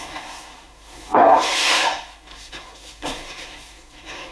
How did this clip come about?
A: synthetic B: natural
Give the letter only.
A